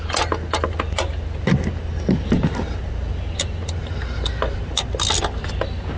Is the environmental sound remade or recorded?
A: recorded